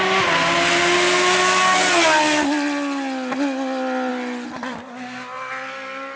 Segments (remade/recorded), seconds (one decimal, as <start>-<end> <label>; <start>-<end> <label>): 0.0-6.2 recorded